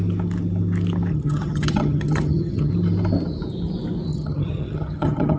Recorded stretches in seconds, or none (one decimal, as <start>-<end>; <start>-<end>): 0.0-1.1; 2.7-4.1